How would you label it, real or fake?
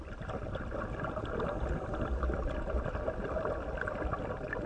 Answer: real